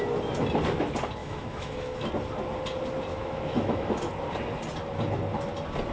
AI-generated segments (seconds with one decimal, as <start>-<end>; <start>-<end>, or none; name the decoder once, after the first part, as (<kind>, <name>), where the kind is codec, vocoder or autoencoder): 1.2-2.1 (autoencoder, DAC-VAE); 3.1-3.9